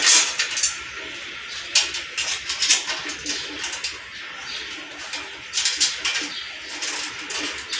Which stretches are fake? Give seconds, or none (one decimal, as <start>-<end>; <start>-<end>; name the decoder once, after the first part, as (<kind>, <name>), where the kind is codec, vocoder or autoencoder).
none